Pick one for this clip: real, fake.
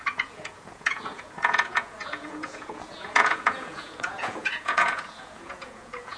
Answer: fake